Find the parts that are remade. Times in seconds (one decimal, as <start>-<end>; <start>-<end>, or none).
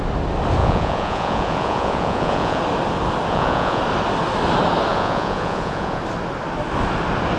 0.6-2.6; 3.3-3.8; 4.9-6.0